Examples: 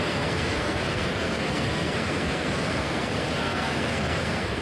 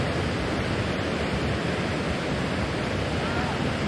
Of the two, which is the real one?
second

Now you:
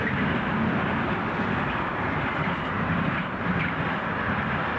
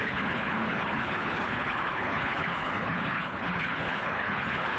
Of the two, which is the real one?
first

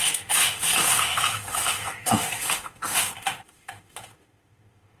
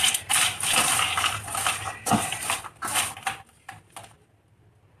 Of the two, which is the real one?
second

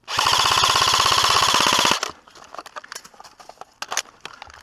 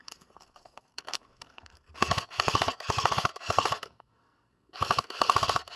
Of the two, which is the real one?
first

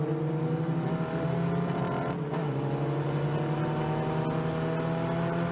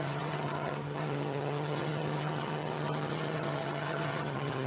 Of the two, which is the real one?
first